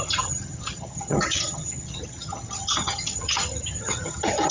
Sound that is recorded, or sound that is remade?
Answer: remade